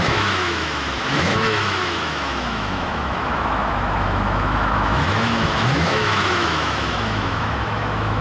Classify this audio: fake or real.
fake